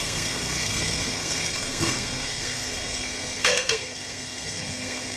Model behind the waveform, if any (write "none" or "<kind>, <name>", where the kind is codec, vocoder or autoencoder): codec, SNAC